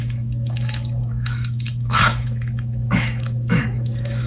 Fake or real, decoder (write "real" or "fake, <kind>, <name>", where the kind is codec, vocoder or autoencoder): fake, autoencoder, DAC-VAE